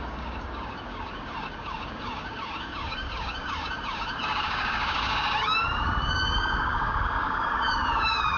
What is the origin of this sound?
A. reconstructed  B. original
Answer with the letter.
A